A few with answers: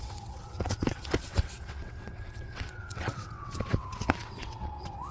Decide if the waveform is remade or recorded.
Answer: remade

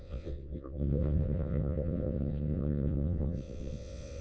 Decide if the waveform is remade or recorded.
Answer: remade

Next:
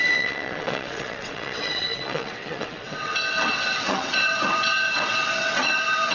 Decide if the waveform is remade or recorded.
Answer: remade